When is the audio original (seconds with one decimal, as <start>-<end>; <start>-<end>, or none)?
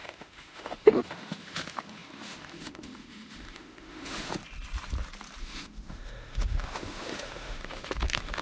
4.4-5.4